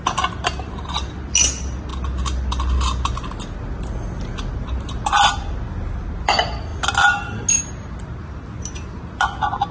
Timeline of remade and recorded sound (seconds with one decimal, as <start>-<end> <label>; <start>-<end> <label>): 0.0-9.7 recorded